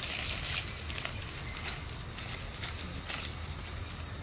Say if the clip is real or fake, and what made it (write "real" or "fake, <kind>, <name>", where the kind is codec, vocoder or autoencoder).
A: real